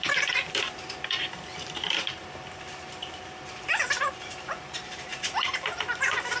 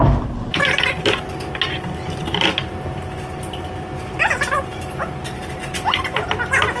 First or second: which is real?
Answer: second